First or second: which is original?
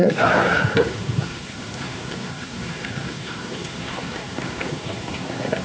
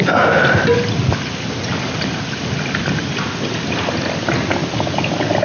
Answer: second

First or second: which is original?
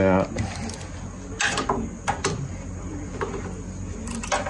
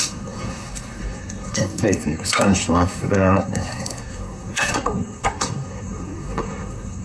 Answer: first